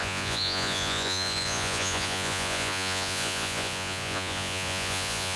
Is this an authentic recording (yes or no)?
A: no